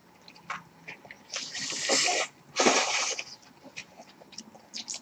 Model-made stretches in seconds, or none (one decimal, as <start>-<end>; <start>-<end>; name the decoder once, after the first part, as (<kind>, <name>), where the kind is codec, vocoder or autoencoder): none